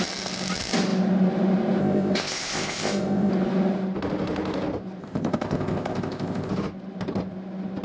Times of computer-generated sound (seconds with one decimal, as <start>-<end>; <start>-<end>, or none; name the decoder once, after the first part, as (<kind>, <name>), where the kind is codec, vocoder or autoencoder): 1.8-3.3 (codec, ZipCodec); 5.0-6.5